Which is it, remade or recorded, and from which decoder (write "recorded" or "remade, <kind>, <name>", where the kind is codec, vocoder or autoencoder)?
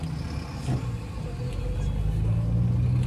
recorded